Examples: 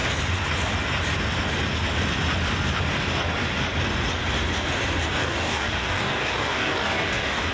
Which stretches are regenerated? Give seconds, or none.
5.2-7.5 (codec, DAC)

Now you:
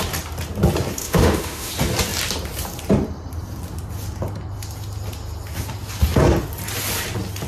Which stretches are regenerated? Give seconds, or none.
1.0-1.7 (autoencoder, DAC-VAE)